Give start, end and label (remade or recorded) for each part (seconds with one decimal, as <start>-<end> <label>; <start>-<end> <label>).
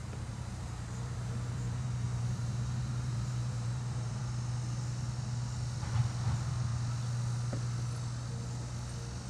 0.0-4.2 remade; 4.2-9.3 recorded